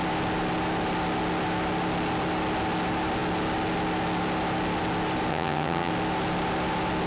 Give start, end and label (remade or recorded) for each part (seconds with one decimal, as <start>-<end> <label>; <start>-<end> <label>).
0.0-5.3 recorded; 5.3-5.9 remade; 5.9-7.1 recorded